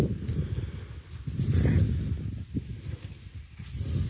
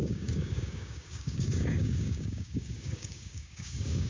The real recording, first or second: first